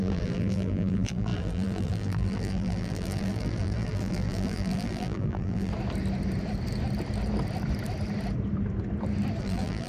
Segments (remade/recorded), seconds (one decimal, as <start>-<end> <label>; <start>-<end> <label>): 0.0-5.7 remade; 5.7-9.4 recorded; 9.4-9.9 remade